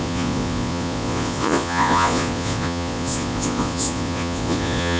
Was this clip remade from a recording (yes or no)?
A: yes